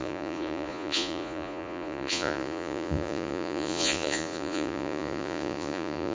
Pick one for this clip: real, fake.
fake